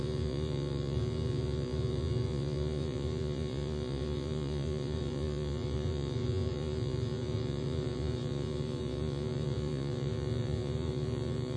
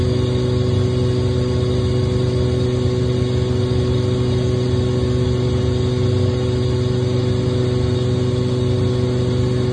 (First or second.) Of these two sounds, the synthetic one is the first